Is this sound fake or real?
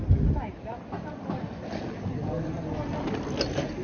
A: real